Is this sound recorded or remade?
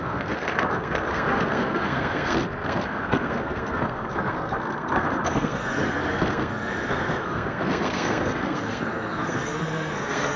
remade